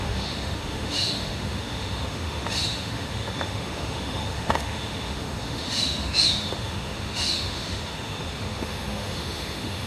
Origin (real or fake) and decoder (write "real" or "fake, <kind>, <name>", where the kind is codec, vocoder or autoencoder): fake, autoencoder, DAC-VAE